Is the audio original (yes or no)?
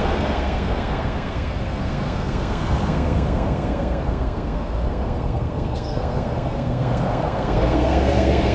no